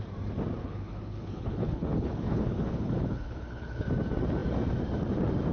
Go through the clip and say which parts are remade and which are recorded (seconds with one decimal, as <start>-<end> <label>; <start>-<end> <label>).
0.0-0.6 recorded; 0.6-3.9 remade; 3.9-5.5 recorded